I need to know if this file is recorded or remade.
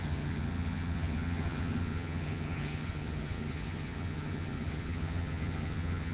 remade